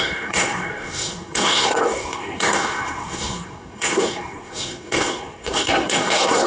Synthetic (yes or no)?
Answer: yes